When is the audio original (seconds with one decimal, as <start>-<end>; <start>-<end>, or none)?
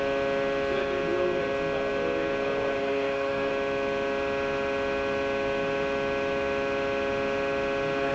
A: 0.0-2.8; 3.5-8.1